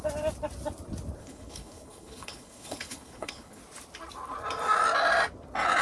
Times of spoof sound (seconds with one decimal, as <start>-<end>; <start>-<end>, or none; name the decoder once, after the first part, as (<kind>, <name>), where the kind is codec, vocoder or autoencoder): 1.2-3.6 (codec, HILCodec)